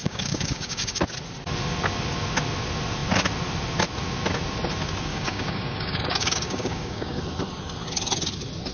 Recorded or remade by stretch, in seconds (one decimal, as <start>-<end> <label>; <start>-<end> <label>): 0.0-1.0 remade; 1.0-5.1 recorded; 5.1-7.2 remade; 7.2-8.7 recorded